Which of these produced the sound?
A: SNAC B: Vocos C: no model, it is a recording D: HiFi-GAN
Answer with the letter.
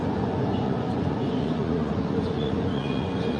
B